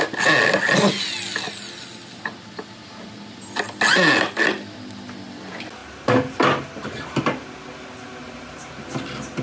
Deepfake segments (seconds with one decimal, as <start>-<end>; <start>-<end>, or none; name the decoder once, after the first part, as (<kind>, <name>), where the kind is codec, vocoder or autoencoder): none